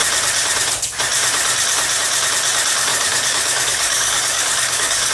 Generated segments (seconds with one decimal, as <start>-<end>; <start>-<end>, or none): 2.9-5.1